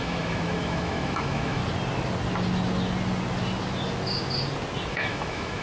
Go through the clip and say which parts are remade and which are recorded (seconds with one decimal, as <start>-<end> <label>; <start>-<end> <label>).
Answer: 0.0-1.6 remade; 1.6-4.9 recorded; 4.9-5.6 remade